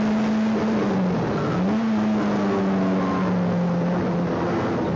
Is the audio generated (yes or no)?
no